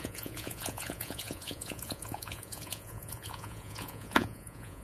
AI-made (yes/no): yes